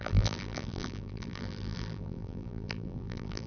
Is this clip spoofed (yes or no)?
yes